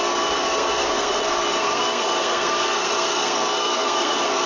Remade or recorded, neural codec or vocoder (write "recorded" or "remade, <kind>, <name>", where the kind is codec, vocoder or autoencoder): remade, codec, SNAC